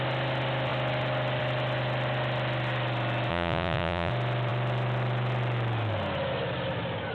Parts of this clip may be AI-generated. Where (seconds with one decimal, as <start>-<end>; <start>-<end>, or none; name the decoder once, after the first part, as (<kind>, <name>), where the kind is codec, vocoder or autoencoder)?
3.3-4.1 (vocoder, Vocos)